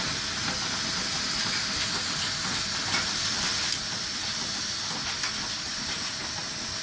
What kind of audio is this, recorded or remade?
recorded